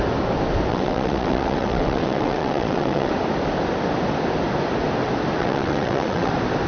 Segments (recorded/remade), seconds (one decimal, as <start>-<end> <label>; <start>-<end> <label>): 0.0-0.7 recorded; 0.7-3.1 remade; 3.1-5.4 recorded; 5.4-6.3 remade; 6.3-6.7 recorded